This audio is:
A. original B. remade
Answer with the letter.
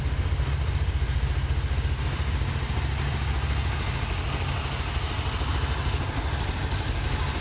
A